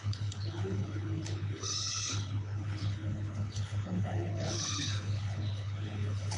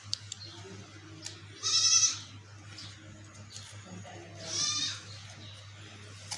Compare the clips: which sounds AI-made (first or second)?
first